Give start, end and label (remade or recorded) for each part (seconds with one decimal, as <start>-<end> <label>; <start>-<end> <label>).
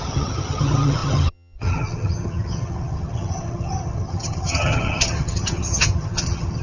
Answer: 0.0-6.6 remade